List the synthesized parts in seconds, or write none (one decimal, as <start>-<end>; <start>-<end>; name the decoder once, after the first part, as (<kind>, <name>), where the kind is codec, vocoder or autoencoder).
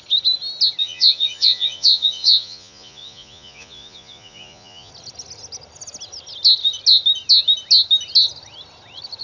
0.8-4.9 (vocoder, Vocos)